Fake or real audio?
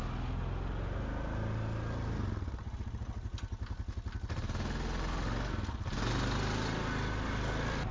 real